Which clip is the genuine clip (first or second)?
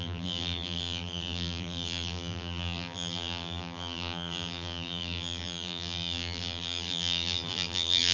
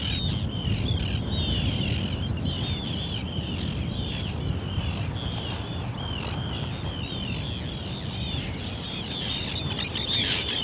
second